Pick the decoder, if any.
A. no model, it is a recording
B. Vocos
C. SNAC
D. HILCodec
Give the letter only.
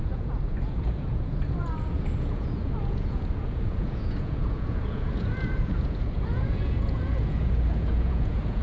B